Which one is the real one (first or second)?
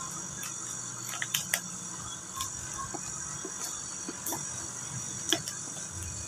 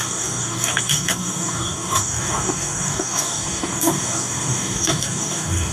first